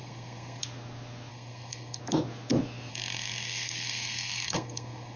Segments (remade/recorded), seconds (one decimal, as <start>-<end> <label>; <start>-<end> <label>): 0.0-0.6 remade; 0.6-1.3 recorded; 1.3-2.0 remade; 2.0-2.9 recorded; 2.9-5.2 remade